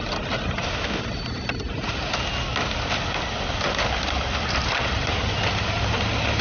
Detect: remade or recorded remade